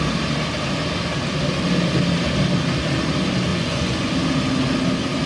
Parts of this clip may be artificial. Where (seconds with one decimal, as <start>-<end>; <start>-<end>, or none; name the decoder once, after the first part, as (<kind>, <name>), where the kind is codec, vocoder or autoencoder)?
3.5-4.1 (vocoder, Vocos)